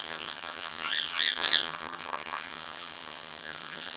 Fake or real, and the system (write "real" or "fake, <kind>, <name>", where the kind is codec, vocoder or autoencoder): fake, vocoder, HiFi-GAN